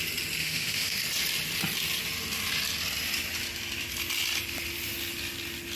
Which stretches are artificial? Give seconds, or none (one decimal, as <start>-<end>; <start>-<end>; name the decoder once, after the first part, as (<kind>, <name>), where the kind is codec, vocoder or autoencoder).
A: 0.4-1.0 (autoencoder, DAC-VAE)